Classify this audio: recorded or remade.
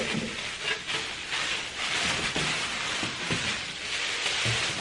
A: recorded